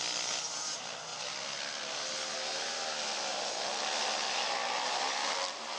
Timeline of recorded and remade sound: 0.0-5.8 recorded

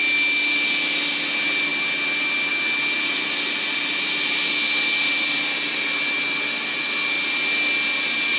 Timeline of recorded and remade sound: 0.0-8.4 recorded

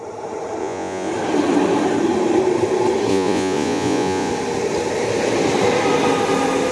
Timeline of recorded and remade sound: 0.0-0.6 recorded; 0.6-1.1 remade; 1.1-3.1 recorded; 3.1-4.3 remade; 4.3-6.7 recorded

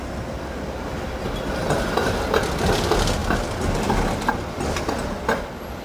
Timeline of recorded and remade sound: 0.0-5.8 recorded

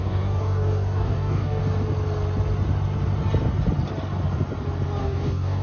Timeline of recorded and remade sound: 0.0-1.6 remade; 1.6-5.0 recorded; 5.0-5.6 remade

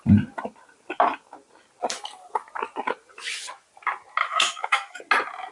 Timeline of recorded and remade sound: 0.0-4.2 recorded; 4.2-5.0 remade; 5.0-5.5 recorded